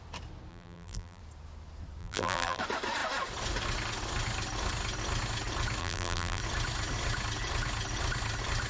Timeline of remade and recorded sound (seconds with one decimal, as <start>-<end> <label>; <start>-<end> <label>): 0.0-0.5 recorded; 0.5-1.2 remade; 1.2-2.0 recorded; 2.0-2.6 remade; 2.6-5.8 recorded; 5.8-6.4 remade; 6.4-8.7 recorded